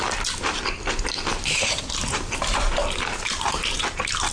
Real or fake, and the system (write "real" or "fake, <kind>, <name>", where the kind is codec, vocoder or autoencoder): fake, vocoder, BigVGAN v2